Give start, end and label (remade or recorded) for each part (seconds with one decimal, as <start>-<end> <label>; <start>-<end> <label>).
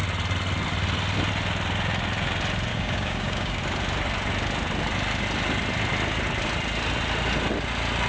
0.0-2.7 recorded; 2.7-3.6 remade; 3.6-8.1 recorded